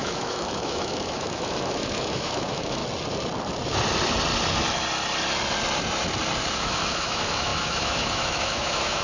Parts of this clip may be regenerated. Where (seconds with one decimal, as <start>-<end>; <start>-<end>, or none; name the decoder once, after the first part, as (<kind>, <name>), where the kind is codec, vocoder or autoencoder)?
0.0-2.8 (autoencoder, DAC-VAE); 6.5-9.0